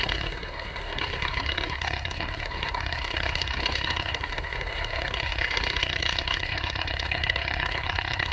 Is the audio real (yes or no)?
no